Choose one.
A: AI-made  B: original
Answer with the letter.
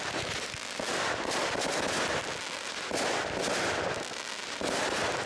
B